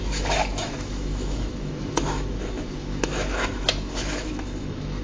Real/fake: fake